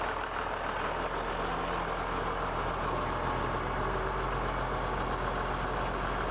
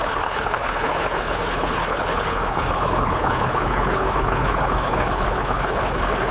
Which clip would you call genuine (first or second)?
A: first